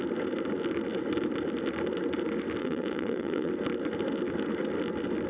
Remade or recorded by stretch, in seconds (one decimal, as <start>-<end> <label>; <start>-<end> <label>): 0.0-2.6 recorded; 2.6-3.5 remade; 3.5-5.3 recorded